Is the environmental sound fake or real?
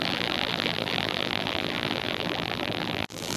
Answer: fake